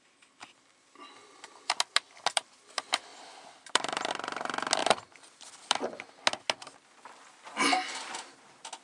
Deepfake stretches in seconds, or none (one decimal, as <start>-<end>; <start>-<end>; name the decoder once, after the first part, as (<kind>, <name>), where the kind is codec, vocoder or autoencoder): 3.1-4.1 (vocoder, BigVGAN v2); 4.8-6.0

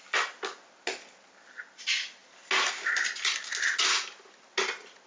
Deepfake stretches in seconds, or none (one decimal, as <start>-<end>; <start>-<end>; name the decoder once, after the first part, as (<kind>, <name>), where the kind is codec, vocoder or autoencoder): none